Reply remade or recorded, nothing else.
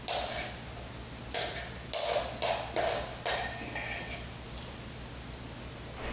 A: recorded